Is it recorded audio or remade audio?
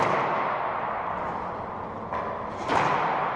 recorded